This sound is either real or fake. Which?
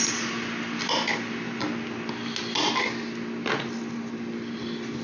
real